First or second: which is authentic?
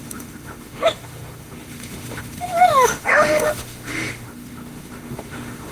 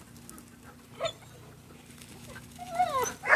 second